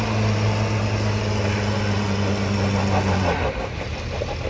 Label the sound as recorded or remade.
recorded